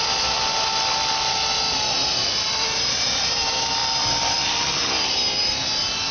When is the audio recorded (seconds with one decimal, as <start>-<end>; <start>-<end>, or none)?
0.0-2.2; 3.3-3.8; 4.8-6.1